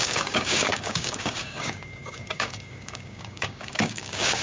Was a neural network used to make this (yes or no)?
yes